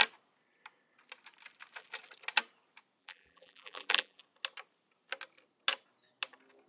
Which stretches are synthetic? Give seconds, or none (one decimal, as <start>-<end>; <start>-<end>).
3.0-4.2